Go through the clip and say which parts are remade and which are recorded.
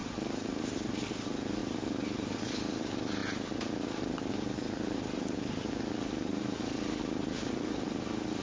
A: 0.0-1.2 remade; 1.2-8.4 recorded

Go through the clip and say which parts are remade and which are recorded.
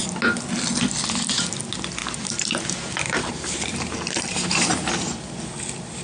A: 0.0-2.0 recorded; 2.0-4.9 remade; 4.9-6.0 recorded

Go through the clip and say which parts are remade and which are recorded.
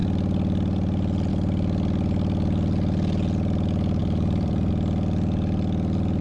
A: 0.0-4.0 recorded; 4.0-4.7 remade; 4.7-6.2 recorded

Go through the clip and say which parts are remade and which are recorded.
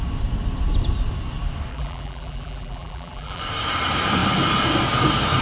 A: 0.0-1.7 recorded; 1.7-3.4 remade; 3.4-5.4 recorded